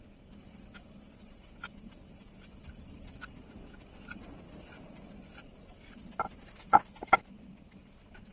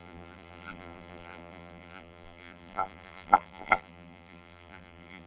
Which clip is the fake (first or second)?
second